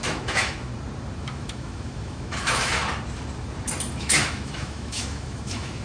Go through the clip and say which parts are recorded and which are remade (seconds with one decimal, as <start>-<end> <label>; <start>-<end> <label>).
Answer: 0.0-0.7 remade; 0.7-1.2 recorded; 1.2-2.8 remade; 2.8-3.9 recorded; 3.9-5.8 remade